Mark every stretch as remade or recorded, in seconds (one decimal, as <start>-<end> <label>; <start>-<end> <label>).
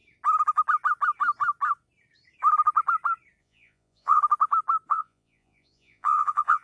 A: 0.0-3.4 recorded; 3.4-4.2 remade; 4.2-4.9 recorded; 4.9-6.6 remade